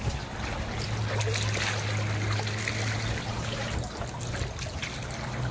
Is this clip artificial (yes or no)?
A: no